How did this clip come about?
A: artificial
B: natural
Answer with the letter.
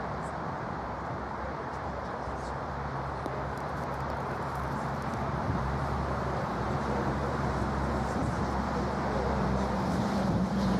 A